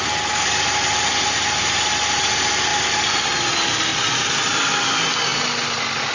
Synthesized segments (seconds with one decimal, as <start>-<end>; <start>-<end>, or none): 3.9-4.4